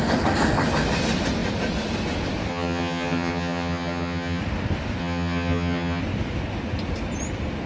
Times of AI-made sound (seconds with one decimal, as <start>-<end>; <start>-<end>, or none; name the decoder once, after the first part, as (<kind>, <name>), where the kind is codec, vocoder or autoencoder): 2.5-4.4 (vocoder, HiFi-GAN); 5.0-6.0